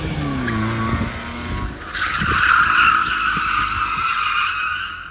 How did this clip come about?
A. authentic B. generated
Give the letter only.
A